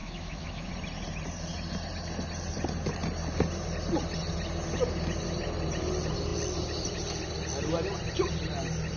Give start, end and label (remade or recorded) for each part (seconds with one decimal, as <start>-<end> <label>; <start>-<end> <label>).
0.0-0.7 remade; 0.7-9.0 recorded

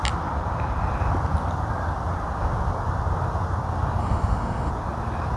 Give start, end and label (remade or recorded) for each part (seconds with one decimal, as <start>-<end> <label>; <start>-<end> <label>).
0.0-4.0 recorded; 4.0-4.7 remade; 4.7-5.4 recorded